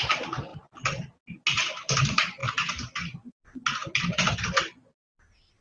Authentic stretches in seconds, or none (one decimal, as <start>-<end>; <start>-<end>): 0.0-5.6